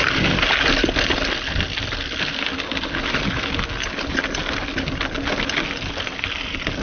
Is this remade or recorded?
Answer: recorded